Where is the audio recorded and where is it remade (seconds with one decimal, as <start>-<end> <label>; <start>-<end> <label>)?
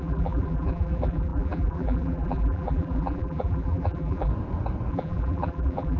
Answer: 0.0-4.3 remade; 4.3-4.9 recorded; 4.9-6.0 remade